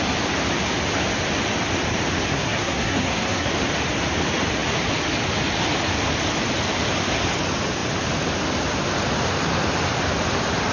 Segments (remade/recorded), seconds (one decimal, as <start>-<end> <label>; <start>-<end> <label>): 0.0-2.3 recorded; 2.3-3.5 remade; 3.5-10.7 recorded